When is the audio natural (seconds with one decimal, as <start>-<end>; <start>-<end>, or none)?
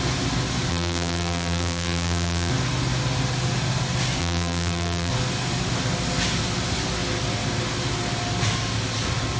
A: 0.0-0.7; 2.5-4.2; 5.1-9.4